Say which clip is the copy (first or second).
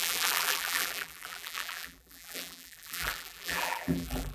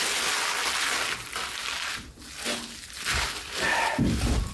first